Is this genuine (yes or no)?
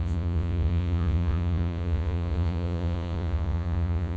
no